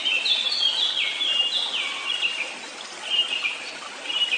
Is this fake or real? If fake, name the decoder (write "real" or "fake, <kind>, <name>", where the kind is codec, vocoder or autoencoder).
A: real